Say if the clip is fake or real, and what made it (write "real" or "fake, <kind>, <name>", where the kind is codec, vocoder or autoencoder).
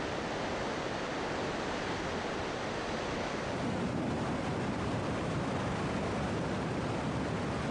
real